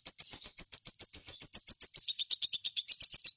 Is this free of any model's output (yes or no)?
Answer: yes